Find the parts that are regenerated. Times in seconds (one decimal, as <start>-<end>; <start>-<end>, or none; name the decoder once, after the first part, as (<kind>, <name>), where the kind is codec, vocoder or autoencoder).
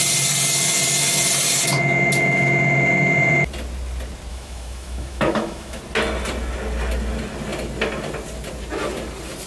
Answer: 4.3-5.8 (autoencoder, DAC-VAE)